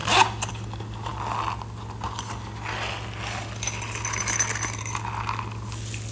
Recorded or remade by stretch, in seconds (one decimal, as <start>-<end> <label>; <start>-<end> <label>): 0.0-6.1 recorded